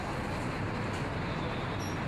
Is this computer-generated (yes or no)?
no